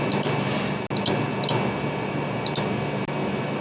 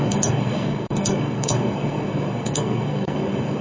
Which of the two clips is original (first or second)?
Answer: first